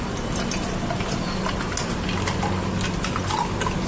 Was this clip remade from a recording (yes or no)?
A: no